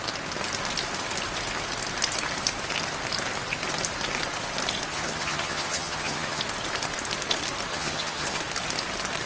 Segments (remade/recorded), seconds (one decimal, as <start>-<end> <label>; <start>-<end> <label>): 0.0-4.9 recorded; 4.9-6.4 remade; 6.4-7.7 recorded; 7.7-8.4 remade; 8.4-9.3 recorded

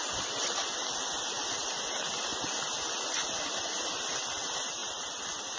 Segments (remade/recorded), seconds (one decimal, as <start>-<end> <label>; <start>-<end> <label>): 0.0-5.6 recorded

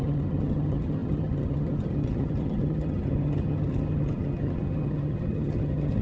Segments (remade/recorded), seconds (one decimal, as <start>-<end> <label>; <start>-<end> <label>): 0.0-6.0 remade

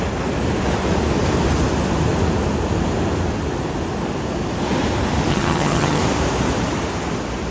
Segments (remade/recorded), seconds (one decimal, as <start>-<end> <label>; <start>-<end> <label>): 0.0-5.3 recorded; 5.3-6.0 remade; 6.0-7.5 recorded